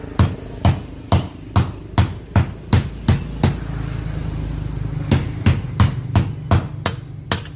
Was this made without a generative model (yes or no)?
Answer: yes